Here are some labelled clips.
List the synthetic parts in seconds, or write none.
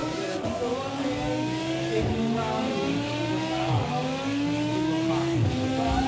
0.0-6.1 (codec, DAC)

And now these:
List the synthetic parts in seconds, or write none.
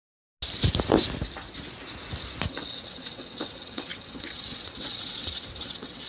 2.5-6.1 (vocoder, WaveNeXt)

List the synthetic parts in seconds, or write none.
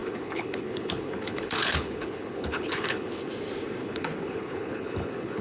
0.0-3.2 (codec, HILCodec); 3.8-5.4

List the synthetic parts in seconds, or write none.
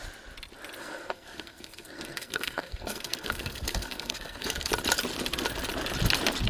0.8-4.7 (codec, SNAC)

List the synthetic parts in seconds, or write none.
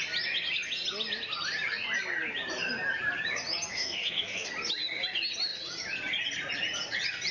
3.7-4.5 (codec, DAC)